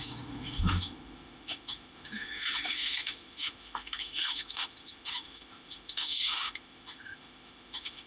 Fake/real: fake